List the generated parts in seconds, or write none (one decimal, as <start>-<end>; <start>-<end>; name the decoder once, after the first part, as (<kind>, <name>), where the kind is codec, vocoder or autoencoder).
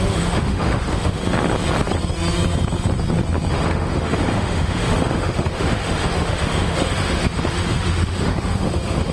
0.0-1.2 (autoencoder, DAC-VAE); 3.5-9.1